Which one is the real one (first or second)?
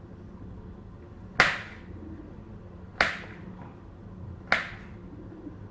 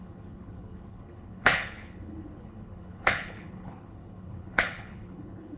first